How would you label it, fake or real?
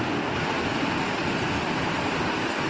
real